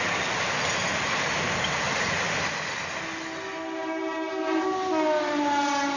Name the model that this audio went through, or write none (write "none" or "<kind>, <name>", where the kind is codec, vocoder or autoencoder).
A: none